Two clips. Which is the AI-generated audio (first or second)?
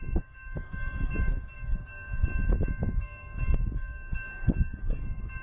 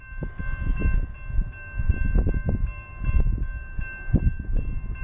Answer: first